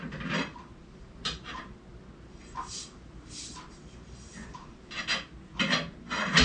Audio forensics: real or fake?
real